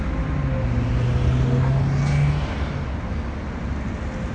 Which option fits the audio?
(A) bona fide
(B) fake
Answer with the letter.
A